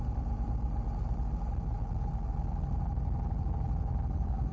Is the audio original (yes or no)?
yes